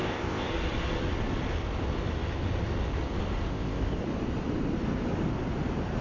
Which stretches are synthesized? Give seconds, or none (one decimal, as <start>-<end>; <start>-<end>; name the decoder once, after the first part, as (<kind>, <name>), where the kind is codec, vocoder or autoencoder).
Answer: 0.0-0.5 (codec, ZipCodec); 3.5-4.0